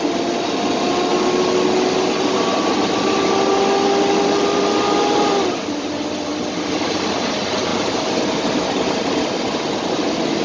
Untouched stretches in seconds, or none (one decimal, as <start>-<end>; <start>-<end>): 0.0-10.4